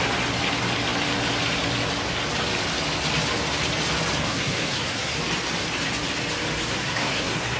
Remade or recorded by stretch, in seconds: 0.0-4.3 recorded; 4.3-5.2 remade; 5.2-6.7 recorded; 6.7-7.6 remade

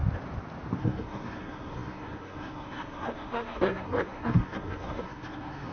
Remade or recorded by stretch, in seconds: 0.0-0.8 recorded; 0.8-5.7 remade

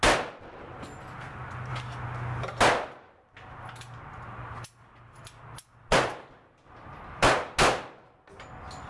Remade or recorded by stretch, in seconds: 0.0-8.9 recorded

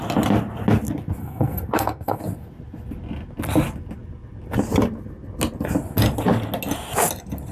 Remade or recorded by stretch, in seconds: 0.0-1.2 recorded; 1.2-2.2 remade; 2.2-7.5 recorded

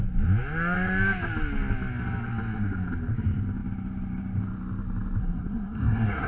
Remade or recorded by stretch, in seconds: 0.0-5.2 recorded; 5.2-6.3 remade

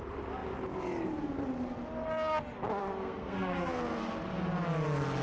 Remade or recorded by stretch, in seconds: 0.0-2.8 recorded; 2.8-4.1 remade; 4.1-5.2 recorded

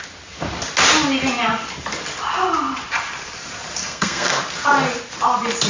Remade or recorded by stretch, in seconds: 0.0-3.8 recorded; 3.8-4.4 remade; 4.4-5.7 recorded